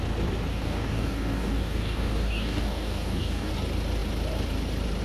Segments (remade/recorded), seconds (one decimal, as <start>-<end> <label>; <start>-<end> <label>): 0.0-0.5 recorded; 0.5-3.5 remade; 3.5-5.0 recorded